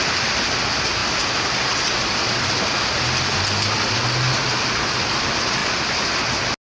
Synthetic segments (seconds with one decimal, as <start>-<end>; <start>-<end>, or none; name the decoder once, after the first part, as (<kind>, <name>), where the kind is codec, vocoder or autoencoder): none